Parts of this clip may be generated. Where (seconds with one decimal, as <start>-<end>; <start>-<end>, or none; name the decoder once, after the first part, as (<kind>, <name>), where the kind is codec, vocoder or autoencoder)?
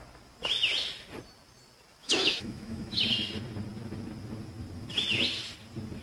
2.0-3.0 (autoencoder, DAC-VAE)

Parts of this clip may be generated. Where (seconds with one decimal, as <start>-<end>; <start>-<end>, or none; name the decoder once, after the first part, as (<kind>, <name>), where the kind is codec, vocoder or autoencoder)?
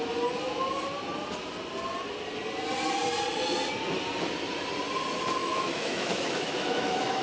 5.4-7.2 (autoencoder, DAC-VAE)